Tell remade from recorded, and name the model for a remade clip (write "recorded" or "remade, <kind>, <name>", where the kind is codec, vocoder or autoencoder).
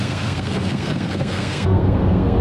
remade, codec, SNAC